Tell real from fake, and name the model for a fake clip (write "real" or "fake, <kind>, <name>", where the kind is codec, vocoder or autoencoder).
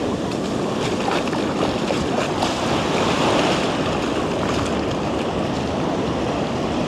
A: real